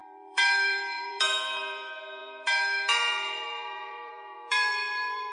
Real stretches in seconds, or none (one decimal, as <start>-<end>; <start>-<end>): none